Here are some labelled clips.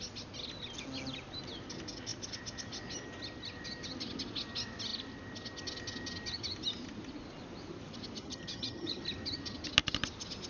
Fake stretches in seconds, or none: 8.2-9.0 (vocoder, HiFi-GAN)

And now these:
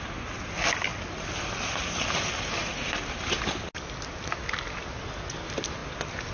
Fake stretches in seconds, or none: none

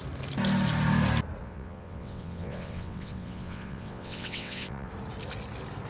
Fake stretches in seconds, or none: 1.4-4.9 (vocoder, WaveNeXt)

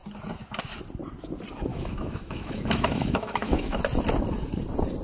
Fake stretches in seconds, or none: 1.7-3.8 (autoencoder, DAC-VAE)

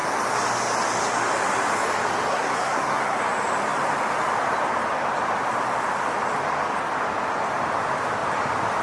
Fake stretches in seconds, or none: 2.3-3.2 (codec, SNAC)